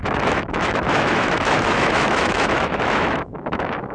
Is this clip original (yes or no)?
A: no